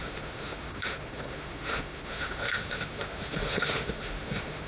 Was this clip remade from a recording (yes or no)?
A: yes